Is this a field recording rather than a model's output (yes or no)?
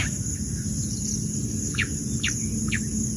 yes